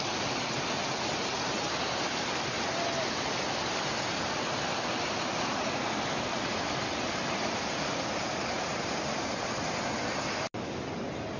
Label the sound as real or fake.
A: real